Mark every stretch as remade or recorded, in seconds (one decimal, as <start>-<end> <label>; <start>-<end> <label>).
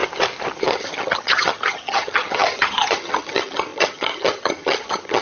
0.0-0.6 recorded; 0.6-5.2 remade